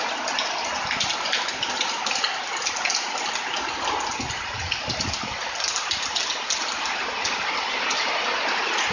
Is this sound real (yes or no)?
yes